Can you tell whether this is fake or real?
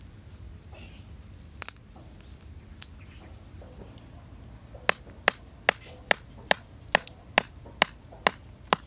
real